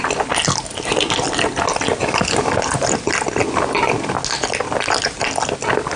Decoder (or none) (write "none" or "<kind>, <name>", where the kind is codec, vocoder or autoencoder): none